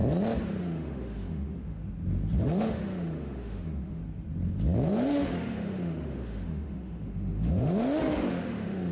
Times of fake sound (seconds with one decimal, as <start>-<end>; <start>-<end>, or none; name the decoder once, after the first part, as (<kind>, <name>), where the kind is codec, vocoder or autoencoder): 0.6-1.8 (autoencoder, DAC-VAE); 2.4-4.0; 4.9-8.9

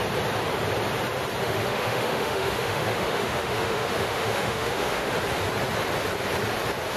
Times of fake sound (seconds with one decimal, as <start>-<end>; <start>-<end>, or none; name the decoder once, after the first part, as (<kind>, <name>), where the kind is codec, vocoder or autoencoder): 1.4-5.1 (autoencoder, DAC-VAE)

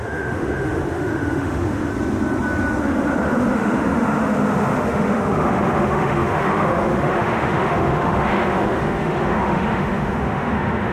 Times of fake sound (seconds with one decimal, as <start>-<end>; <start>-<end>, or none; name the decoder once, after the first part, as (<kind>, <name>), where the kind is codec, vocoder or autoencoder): 0.0-1.9 (autoencoder, DAC-VAE); 2.8-10.9

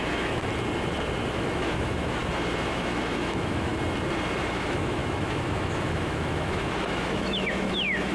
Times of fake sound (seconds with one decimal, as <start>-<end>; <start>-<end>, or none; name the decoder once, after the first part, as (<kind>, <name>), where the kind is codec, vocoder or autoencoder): 0.0-0.5 (autoencoder, DAC-VAE); 1.3-2.2; 2.7-3.7; 4.4-8.1

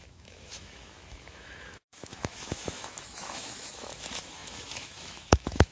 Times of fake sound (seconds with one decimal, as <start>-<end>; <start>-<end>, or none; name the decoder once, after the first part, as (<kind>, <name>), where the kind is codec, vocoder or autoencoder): 0.0-5.7 (autoencoder, DAC-VAE)